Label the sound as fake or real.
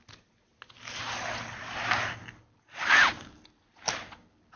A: real